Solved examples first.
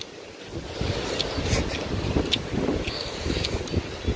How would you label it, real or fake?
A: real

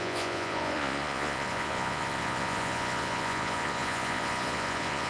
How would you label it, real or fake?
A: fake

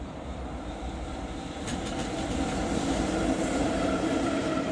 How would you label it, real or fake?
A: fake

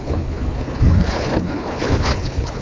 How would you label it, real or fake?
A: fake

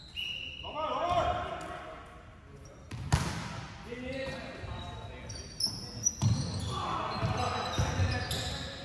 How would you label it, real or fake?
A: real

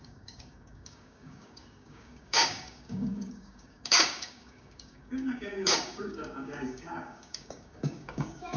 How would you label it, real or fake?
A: fake